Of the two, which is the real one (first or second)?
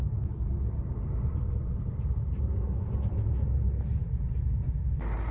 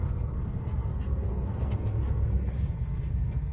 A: first